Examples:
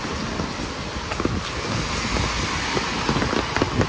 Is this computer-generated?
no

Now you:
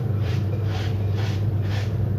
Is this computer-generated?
yes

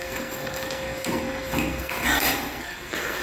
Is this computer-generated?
yes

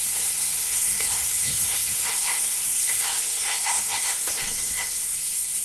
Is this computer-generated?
yes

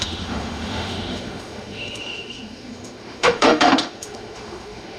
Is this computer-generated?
yes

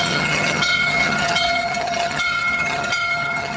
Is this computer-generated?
yes